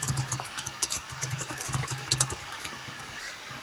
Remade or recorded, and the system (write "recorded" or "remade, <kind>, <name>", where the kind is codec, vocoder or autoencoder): remade, codec, DAC